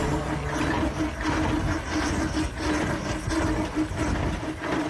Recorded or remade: recorded